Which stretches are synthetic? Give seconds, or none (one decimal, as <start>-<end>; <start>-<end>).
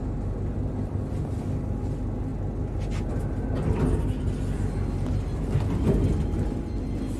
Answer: none